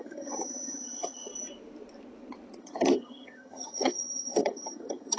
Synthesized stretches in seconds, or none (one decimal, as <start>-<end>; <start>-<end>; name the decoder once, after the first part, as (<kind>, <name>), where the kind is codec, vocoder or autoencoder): 0.0-1.3 (vocoder, HiFi-GAN); 2.6-5.2